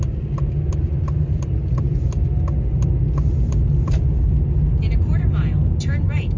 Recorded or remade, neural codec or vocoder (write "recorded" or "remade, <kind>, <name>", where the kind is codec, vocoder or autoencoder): recorded